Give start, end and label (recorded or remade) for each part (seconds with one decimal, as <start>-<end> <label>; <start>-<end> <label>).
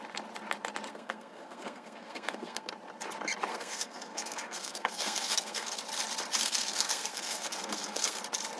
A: 0.0-0.9 recorded; 0.9-2.7 remade; 2.7-3.5 recorded; 3.5-5.8 remade; 5.8-6.4 recorded; 6.4-8.2 remade; 8.2-8.6 recorded